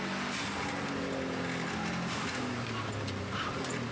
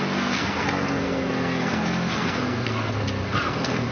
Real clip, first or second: first